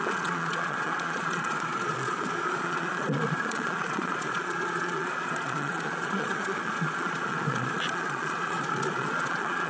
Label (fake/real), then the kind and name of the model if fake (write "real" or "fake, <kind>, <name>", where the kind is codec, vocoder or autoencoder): fake, vocoder, Vocos